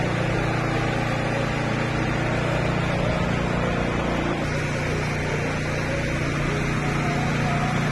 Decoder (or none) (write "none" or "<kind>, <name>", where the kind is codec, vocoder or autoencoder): none